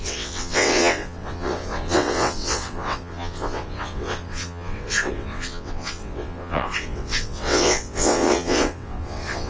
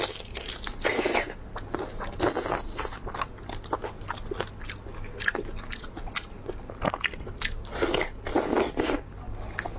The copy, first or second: first